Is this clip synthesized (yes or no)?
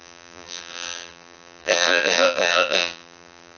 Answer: yes